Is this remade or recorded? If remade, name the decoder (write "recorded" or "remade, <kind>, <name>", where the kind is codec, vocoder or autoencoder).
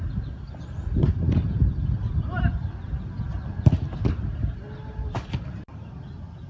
recorded